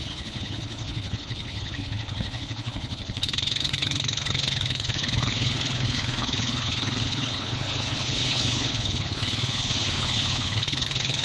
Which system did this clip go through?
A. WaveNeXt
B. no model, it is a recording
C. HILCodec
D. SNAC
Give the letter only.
C